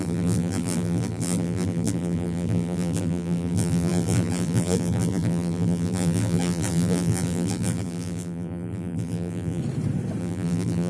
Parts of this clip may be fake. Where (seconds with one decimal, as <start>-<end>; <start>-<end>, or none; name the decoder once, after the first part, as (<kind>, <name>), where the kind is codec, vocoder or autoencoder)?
0.0-9.6 (vocoder, BigVGAN v2); 10.2-10.9

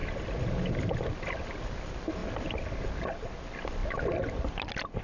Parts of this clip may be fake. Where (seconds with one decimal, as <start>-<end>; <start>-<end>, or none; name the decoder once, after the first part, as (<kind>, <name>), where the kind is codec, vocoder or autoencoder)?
none

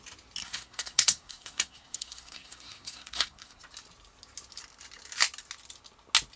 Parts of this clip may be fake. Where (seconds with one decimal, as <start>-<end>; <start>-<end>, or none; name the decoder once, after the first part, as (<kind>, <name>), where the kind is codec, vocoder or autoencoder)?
0.4-3.6 (codec, SNAC)

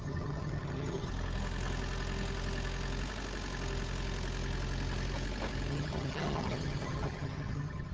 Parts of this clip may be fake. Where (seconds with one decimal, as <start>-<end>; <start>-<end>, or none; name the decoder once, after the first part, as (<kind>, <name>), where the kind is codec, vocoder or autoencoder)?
0.0-1.1 (vocoder, HiFi-GAN); 5.7-7.9

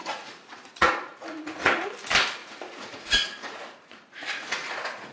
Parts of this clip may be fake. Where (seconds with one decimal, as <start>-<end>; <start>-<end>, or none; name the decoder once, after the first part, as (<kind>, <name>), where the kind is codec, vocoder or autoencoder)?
0.0-1.9 (vocoder, Vocos); 2.4-5.1

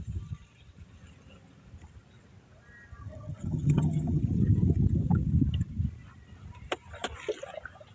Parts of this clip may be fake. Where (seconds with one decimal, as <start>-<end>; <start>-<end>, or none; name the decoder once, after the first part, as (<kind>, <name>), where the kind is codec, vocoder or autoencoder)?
3.0-4.2 (vocoder, HiFi-GAN)